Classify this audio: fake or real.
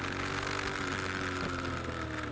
real